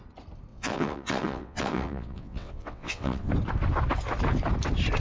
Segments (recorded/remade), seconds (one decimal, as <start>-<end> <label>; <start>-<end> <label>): 0.0-0.5 recorded; 0.5-3.3 remade; 3.3-5.0 recorded